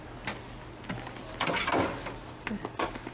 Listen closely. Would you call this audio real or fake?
real